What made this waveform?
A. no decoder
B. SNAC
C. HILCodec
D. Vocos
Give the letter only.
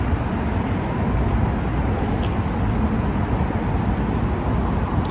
A